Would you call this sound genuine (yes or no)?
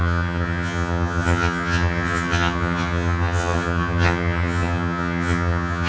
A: no